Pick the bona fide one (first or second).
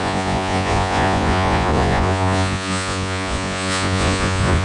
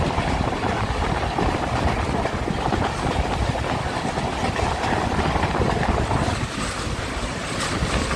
second